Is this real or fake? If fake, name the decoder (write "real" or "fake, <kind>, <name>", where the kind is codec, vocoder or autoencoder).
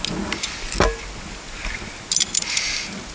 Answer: real